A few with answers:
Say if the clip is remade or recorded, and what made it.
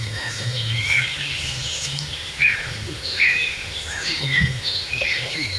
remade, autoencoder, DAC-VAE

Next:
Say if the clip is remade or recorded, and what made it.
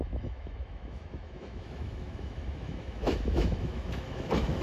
remade, autoencoder, DAC-VAE